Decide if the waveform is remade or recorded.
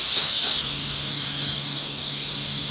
remade